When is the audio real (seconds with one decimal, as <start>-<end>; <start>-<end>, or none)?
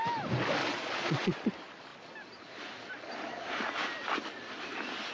0.0-0.6; 1.5-5.1